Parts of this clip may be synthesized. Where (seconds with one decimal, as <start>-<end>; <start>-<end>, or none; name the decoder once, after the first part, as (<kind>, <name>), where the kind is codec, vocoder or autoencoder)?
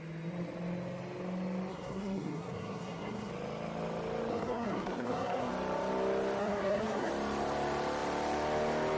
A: 1.7-3.3 (codec, SNAC); 4.3-5.5; 6.4-7.1